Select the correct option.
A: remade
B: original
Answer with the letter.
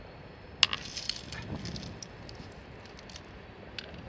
B